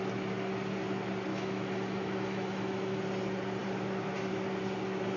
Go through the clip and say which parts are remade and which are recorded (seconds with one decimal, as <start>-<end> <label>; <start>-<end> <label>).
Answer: 0.0-1.3 recorded; 1.3-3.0 remade; 3.0-5.2 recorded